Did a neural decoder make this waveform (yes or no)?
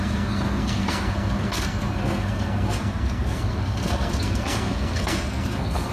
yes